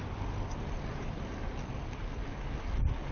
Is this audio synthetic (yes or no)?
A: no